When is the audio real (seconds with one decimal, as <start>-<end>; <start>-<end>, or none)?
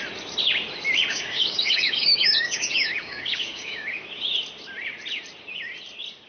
0.0-1.1; 3.9-6.3